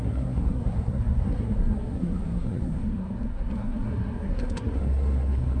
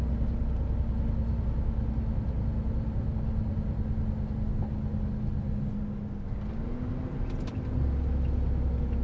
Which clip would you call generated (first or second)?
first